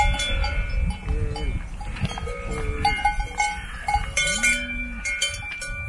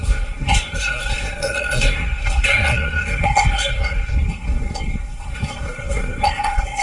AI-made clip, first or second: second